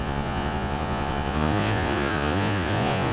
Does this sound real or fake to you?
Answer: fake